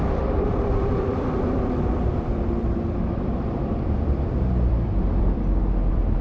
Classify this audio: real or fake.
fake